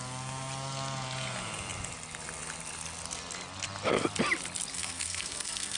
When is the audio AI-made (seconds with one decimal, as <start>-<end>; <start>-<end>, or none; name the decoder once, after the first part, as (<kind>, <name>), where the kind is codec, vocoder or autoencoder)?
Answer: 4.7-5.8 (codec, SNAC)